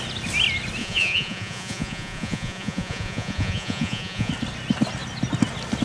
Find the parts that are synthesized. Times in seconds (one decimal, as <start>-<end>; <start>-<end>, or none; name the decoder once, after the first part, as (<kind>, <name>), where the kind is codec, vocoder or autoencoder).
0.8-4.3 (vocoder, Vocos)